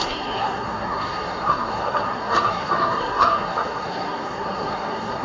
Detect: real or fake fake